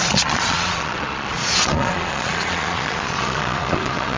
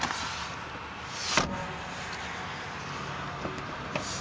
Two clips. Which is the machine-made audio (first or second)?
first